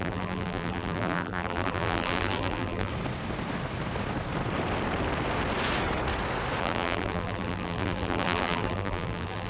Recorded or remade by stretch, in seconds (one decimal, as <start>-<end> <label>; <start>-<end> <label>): 0.0-2.9 remade; 2.9-6.6 recorded; 6.6-9.5 remade